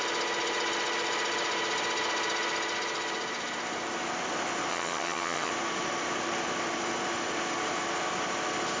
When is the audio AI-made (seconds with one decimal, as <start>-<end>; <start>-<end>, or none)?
4.7-5.5